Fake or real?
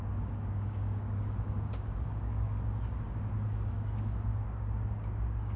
fake